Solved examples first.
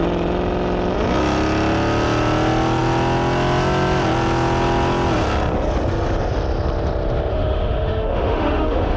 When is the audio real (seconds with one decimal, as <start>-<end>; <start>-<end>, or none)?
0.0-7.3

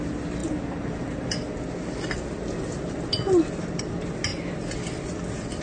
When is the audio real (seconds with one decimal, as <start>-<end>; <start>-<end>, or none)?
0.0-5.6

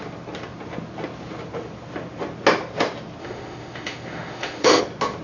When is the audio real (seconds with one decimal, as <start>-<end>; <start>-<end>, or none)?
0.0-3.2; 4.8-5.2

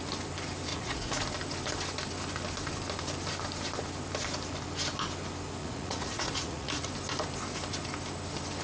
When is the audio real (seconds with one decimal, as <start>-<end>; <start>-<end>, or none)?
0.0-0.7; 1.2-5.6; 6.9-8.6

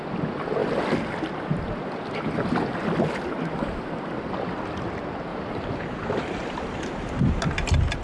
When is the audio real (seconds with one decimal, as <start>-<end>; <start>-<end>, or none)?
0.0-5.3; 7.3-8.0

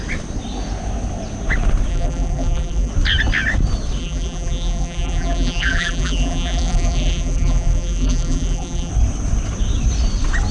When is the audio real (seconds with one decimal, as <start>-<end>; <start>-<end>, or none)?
0.0-1.9; 2.9-4.0; 8.9-10.5